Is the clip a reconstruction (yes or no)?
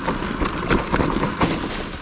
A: no